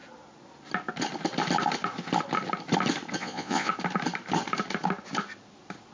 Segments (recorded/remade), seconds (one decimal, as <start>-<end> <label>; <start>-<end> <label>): 0.0-3.2 recorded; 3.2-3.7 remade; 3.7-5.9 recorded